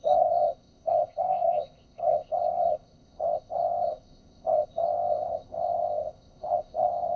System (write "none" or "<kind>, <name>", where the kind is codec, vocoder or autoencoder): codec, ZipCodec